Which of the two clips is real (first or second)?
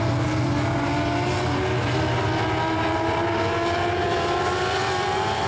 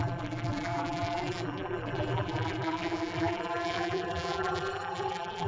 first